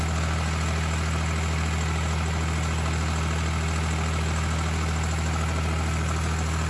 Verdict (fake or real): real